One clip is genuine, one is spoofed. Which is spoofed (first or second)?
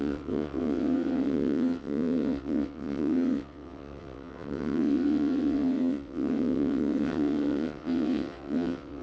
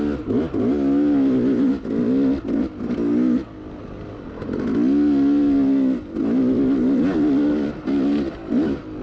first